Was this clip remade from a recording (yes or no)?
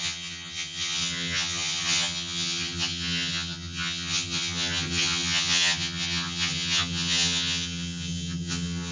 yes